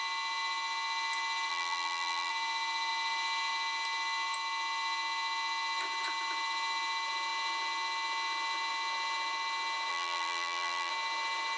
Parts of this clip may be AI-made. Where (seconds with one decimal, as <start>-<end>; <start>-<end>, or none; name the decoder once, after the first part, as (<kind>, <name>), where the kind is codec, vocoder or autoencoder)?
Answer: 1.5-2.3 (vocoder, BigVGAN v2); 9.9-10.9